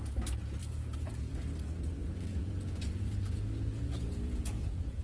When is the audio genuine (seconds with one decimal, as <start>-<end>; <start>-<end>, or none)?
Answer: 0.0-0.6; 1.5-2.0